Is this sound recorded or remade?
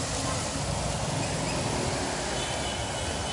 recorded